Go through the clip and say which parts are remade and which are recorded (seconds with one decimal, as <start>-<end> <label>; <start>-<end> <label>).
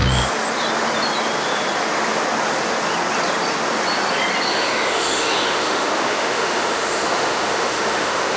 0.0-4.5 recorded; 4.5-8.4 remade